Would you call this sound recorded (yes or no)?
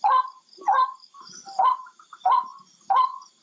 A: yes